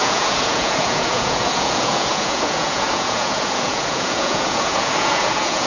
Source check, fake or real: fake